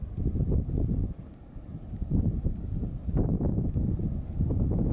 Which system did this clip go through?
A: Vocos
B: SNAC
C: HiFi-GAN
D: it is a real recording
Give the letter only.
D